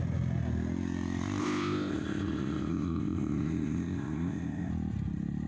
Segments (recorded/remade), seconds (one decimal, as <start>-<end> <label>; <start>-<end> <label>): 0.0-1.4 recorded; 1.4-4.7 remade; 4.7-5.5 recorded

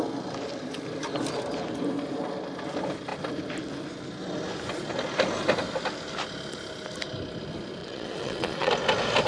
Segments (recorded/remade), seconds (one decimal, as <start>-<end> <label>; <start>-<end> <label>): 0.0-7.8 recorded; 7.8-8.7 remade; 8.7-9.3 recorded

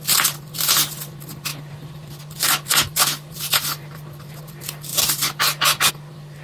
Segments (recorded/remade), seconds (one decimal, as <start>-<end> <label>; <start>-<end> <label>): 0.0-6.4 recorded

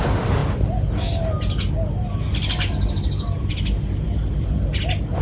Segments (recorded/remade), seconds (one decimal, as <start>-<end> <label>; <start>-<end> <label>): 0.0-0.4 remade; 0.4-3.5 recorded; 3.5-5.2 remade

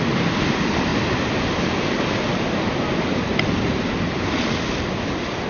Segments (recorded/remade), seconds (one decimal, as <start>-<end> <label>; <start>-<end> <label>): 0.0-5.5 recorded